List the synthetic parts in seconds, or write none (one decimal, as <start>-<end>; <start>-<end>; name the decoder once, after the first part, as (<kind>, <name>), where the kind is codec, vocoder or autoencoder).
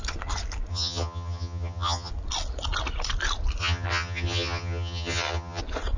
0.7-2.1 (vocoder, HiFi-GAN); 3.6-5.6